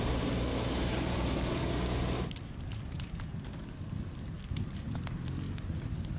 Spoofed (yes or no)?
no